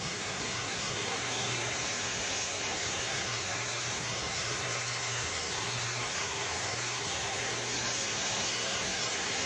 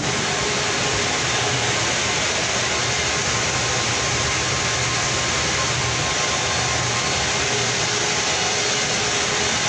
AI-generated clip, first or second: first